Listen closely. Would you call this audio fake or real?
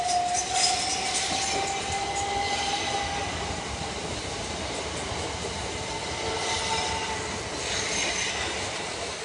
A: real